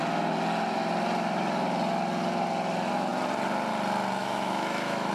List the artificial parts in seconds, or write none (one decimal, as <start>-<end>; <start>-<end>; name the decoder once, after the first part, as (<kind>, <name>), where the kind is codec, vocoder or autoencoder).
4.2-5.1 (autoencoder, DAC-VAE)

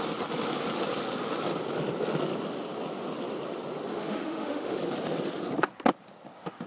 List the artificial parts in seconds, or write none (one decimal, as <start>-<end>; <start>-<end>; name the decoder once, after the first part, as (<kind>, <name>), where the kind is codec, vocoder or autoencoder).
3.9-4.8 (autoencoder, DAC-VAE)

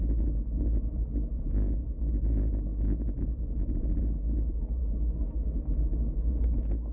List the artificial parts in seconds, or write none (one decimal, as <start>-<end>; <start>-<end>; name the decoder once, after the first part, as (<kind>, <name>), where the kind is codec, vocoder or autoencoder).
2.7-3.8 (autoencoder, DAC-VAE)

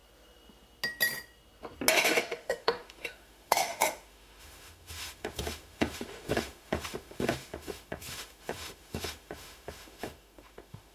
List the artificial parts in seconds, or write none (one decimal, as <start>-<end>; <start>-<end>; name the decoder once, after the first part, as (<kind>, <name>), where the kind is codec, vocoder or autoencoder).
1.9-10.9 (autoencoder, DAC-VAE)

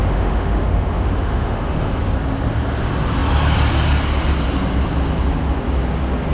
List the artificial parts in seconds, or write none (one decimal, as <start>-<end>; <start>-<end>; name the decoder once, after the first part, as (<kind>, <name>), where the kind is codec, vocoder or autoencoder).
0.0-2.0 (autoencoder, DAC-VAE)

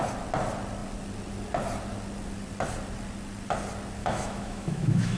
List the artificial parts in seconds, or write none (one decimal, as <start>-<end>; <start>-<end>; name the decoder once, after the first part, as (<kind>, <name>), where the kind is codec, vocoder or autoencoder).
4.0-5.2 (autoencoder, DAC-VAE)

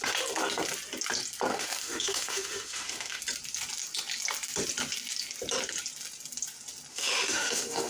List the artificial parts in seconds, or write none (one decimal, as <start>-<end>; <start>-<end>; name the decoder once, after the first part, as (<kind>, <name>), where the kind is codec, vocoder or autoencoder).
1.5-3.2 (autoencoder, DAC-VAE); 6.9-7.9